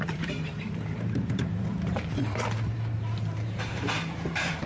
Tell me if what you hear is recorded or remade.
remade